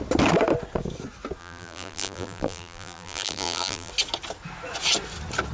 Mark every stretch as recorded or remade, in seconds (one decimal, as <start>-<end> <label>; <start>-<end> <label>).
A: 0.0-1.4 recorded; 1.4-3.9 remade; 3.9-5.5 recorded